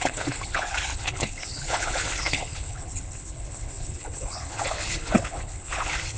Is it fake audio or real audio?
fake